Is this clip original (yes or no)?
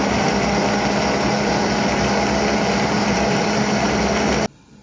yes